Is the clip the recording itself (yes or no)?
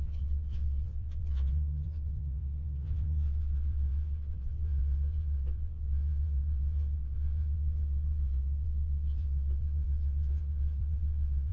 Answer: no